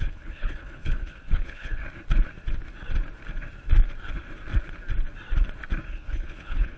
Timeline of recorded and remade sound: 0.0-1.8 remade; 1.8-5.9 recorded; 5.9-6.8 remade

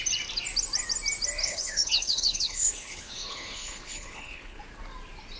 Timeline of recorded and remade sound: 0.0-1.4 recorded; 1.4-4.6 remade; 4.6-5.4 recorded

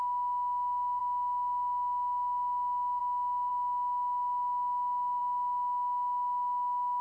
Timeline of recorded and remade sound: 0.0-7.0 recorded

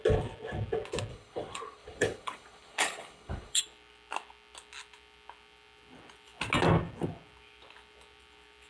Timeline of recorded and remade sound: 0.0-1.1 recorded; 1.1-3.6 remade; 3.6-8.7 recorded

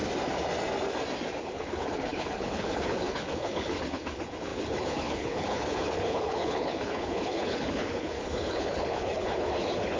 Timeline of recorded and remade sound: 0.0-1.4 recorded; 1.4-10.0 remade

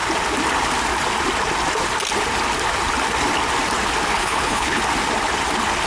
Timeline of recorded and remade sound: 0.0-4.1 recorded; 4.1-4.8 remade; 4.8-5.9 recorded

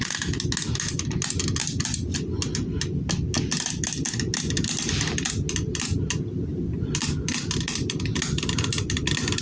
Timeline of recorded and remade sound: 0.0-9.4 recorded